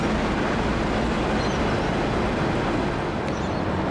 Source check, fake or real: real